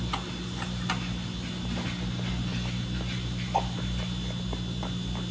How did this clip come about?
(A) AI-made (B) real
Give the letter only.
B